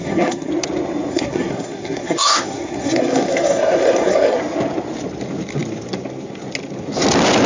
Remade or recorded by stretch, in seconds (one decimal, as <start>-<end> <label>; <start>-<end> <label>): 0.0-0.5 remade; 0.5-1.1 recorded; 1.1-4.4 remade; 4.4-7.5 recorded